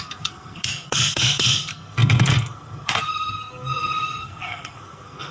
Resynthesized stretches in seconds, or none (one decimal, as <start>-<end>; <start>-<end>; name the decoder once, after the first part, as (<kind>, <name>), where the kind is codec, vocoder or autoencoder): 0.0-5.3 (codec, SNAC)